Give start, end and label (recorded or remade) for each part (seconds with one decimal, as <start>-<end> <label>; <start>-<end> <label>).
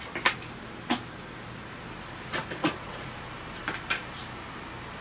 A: 0.0-2.6 recorded; 2.6-3.1 remade; 3.1-5.0 recorded